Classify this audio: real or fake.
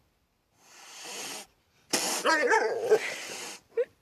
real